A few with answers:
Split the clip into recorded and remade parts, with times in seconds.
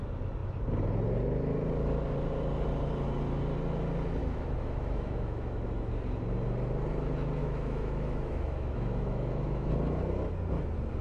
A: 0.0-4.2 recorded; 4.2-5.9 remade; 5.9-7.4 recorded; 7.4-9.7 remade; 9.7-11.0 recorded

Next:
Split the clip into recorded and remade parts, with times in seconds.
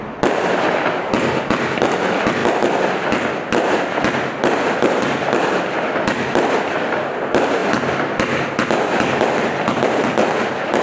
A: 0.0-10.8 recorded